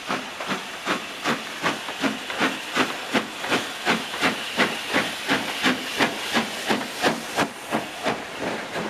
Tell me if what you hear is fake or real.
real